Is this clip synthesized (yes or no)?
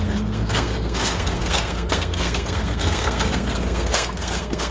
yes